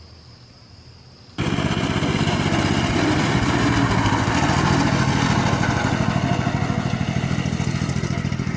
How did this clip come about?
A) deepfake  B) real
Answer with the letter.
B